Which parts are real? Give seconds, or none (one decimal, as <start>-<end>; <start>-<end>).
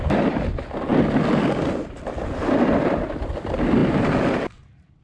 0.0-5.0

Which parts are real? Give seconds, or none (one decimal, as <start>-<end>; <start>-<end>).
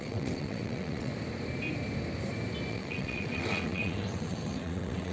1.1-2.7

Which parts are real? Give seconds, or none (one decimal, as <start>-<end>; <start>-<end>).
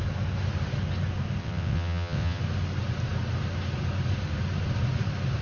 0.0-1.4; 2.4-5.4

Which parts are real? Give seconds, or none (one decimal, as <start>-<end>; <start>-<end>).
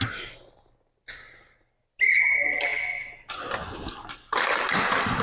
0.0-5.2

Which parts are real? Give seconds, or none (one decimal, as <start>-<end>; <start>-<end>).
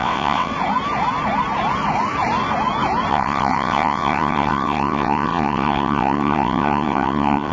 0.5-3.1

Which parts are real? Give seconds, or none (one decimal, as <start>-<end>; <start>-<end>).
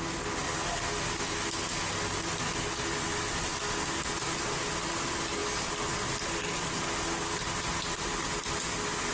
0.0-9.1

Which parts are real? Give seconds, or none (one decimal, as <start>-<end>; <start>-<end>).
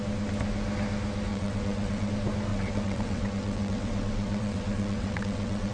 0.0-1.3; 2.1-2.5